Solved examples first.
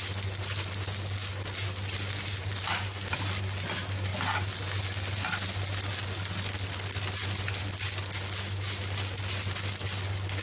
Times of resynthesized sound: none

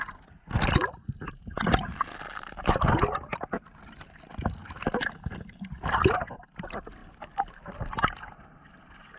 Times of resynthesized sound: none

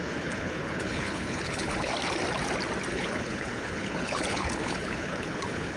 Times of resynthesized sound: 0.0-1.9 (codec, HILCodec); 2.9-5.8

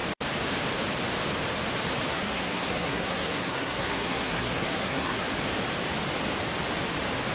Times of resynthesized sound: 2.1-5.3 (codec, SNAC)

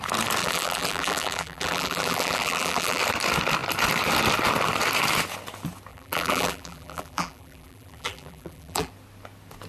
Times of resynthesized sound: 0.4-3.0 (vocoder, BigVGAN v2); 5.9-8.9

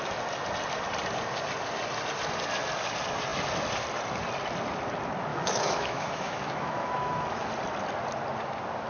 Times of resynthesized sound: 5.3-7.5 (autoencoder, DAC-VAE)